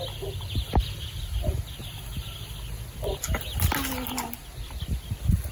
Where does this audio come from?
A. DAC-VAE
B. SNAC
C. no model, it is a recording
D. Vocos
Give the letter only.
C